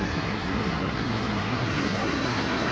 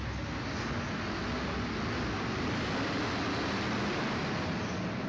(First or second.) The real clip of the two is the second